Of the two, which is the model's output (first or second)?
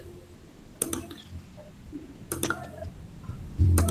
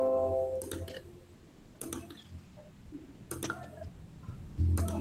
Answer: first